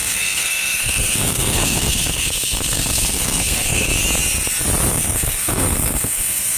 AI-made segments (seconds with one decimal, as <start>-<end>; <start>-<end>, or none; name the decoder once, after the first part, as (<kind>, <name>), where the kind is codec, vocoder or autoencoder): 0.0-3.9 (codec, SNAC); 4.9-6.6